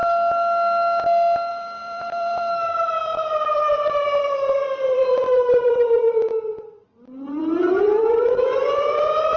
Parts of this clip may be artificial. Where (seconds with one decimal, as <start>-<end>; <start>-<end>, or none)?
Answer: 1.5-9.4